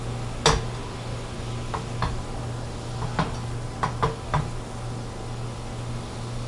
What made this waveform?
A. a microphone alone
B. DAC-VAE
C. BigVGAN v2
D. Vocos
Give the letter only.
A